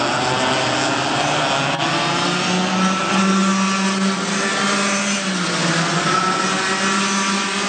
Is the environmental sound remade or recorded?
recorded